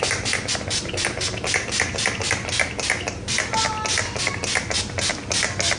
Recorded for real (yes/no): yes